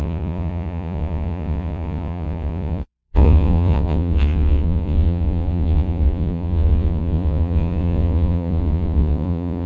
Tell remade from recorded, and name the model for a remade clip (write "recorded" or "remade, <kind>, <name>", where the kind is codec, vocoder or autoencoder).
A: remade, vocoder, Vocos